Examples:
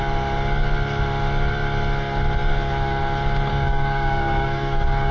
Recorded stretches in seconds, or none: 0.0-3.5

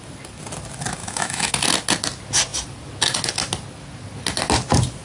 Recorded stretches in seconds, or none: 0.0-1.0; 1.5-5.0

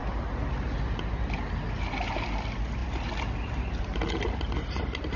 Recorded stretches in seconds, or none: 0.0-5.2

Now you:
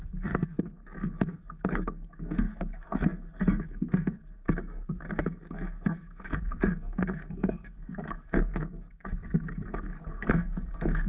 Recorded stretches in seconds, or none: none

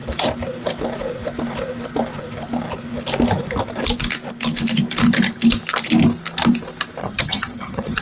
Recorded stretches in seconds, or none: 0.0-7.0

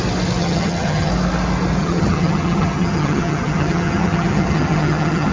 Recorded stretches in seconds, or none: 0.0-0.4; 1.1-1.8

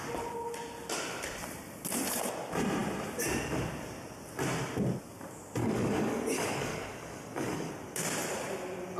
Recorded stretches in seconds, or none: 0.0-5.6; 7.7-9.0